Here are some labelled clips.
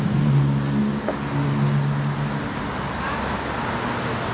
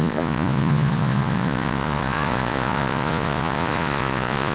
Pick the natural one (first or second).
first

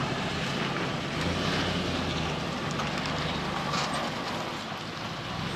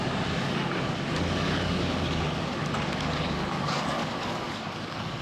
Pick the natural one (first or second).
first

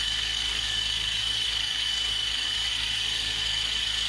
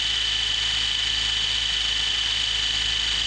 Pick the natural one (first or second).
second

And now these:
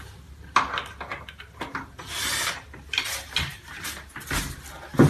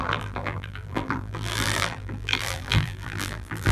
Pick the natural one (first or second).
first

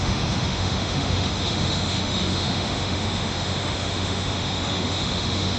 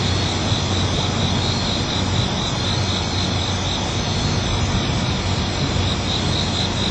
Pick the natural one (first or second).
second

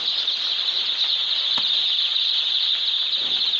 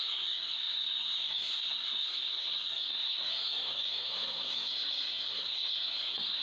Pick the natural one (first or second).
first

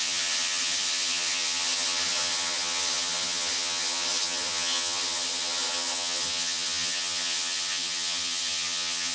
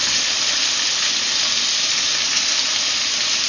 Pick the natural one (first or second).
second